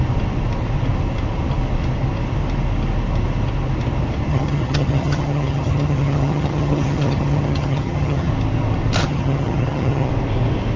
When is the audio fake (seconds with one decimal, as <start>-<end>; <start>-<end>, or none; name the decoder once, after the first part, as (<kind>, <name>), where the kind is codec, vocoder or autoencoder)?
4.3-8.3 (vocoder, HiFi-GAN); 9.0-10.1

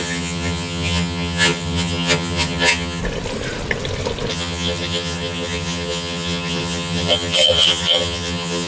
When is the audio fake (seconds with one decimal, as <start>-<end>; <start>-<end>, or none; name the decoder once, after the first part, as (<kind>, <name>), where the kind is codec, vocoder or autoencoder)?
0.0-3.0 (vocoder, HiFi-GAN); 4.3-8.7

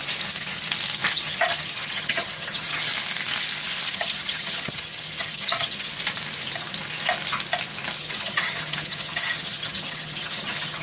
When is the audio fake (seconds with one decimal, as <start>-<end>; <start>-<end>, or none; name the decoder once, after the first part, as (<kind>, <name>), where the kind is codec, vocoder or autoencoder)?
1.1-2.9 (vocoder, HiFi-GAN); 3.9-5.9; 8.0-10.8

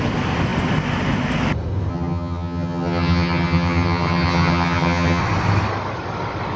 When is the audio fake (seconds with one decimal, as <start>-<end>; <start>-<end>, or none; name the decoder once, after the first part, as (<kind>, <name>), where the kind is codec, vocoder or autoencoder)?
1.9-5.2 (vocoder, HiFi-GAN)

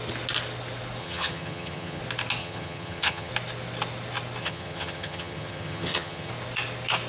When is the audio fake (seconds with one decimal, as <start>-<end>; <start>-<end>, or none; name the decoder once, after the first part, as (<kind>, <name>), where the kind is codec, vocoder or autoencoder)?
1.0-2.0 (vocoder, HiFi-GAN); 2.4-3.3; 4.4-6.3

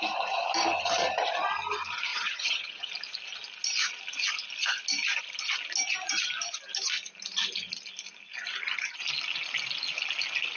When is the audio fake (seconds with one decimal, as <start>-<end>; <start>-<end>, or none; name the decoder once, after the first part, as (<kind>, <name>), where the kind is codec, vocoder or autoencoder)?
2.1-2.9 (vocoder, HiFi-GAN)

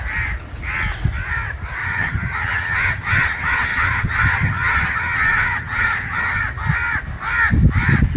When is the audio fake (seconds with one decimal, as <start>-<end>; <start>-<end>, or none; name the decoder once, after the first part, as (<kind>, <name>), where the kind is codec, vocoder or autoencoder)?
1.8-6.4 (vocoder, HiFi-GAN)

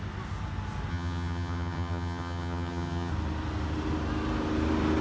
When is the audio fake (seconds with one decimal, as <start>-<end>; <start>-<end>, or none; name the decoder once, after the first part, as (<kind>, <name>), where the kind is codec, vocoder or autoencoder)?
0.9-3.1 (vocoder, HiFi-GAN)